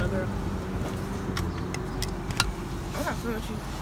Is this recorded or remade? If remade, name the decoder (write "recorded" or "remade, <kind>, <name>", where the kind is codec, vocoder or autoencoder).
recorded